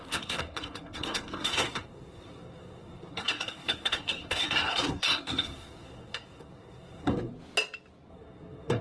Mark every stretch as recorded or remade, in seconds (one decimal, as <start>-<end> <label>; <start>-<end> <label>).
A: 0.0-7.3 remade; 7.3-8.1 recorded; 8.1-8.8 remade